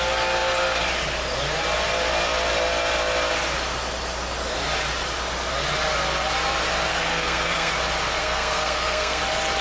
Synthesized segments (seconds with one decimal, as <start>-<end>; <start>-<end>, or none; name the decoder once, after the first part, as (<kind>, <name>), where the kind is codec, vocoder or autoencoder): 6.9-7.7 (codec, SNAC); 8.2-9.2